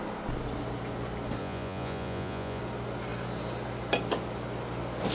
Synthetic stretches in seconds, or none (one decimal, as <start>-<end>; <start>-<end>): 1.4-2.6